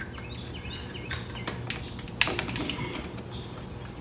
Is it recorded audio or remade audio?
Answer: recorded